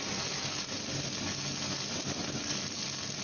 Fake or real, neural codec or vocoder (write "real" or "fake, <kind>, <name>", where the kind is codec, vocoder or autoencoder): real